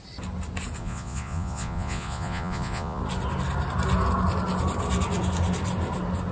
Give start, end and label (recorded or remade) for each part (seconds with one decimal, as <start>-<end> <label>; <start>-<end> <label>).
0.0-0.8 recorded; 0.8-3.0 remade; 3.0-6.3 recorded